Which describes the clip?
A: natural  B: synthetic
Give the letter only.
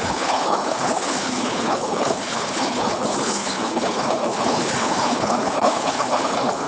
B